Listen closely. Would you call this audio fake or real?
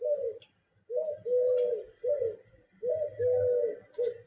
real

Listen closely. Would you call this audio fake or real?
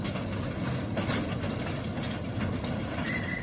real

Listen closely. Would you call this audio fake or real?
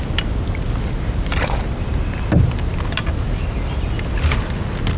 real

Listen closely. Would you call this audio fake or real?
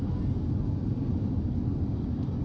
real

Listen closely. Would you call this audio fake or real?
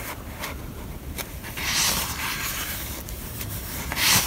real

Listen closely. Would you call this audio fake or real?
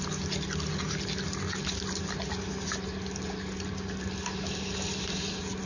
real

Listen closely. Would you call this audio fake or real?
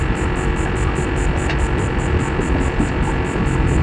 real